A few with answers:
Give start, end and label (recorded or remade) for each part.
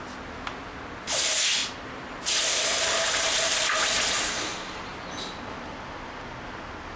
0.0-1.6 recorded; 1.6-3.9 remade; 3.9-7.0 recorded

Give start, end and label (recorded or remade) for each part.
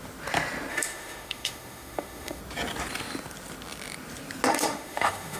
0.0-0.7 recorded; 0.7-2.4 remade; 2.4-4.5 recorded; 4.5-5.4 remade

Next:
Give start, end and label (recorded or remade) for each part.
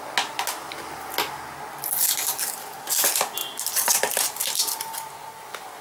0.0-5.8 recorded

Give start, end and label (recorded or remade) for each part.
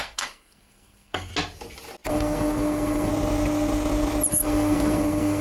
0.0-1.3 remade; 1.3-2.1 recorded; 2.1-3.1 remade; 3.1-4.3 recorded; 4.3-5.4 remade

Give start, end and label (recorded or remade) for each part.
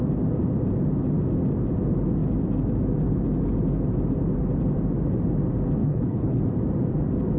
0.0-5.8 recorded; 5.8-6.4 remade; 6.4-7.4 recorded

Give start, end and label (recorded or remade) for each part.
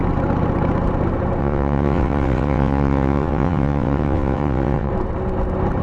0.0-1.4 recorded; 1.4-4.9 remade; 4.9-5.8 recorded